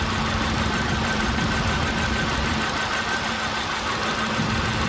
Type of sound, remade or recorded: remade